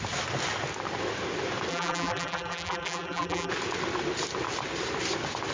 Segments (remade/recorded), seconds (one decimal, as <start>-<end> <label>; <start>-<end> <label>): 0.0-1.7 recorded; 1.7-3.5 remade; 3.5-5.5 recorded